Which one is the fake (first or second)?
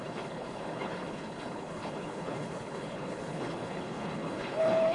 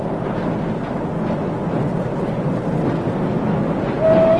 first